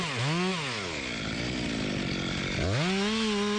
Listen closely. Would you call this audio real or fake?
real